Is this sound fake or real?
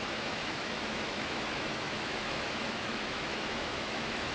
fake